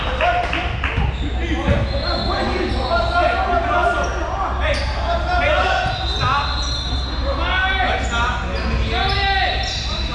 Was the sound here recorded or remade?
recorded